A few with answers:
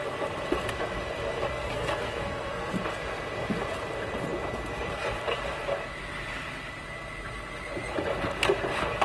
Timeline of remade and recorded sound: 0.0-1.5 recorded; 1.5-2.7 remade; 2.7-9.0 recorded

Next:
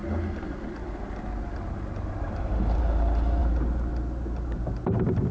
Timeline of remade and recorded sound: 0.0-5.3 recorded

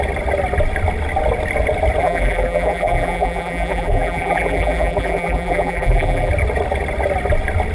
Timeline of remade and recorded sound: 0.0-2.0 recorded; 2.0-6.3 remade; 6.3-7.7 recorded

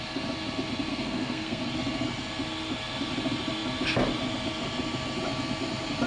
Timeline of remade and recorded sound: 0.0-0.9 recorded; 0.9-1.6 remade; 1.6-6.1 recorded

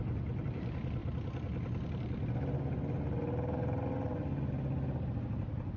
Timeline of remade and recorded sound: 0.0-5.8 recorded

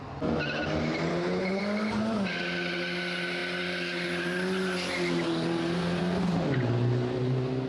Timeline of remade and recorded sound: 0.0-1.1 recorded; 1.1-1.6 remade; 1.6-7.7 recorded